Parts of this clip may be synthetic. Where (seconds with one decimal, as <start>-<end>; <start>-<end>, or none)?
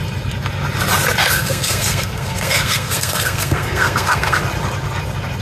1.2-4.4